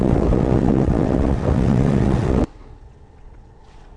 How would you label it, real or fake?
fake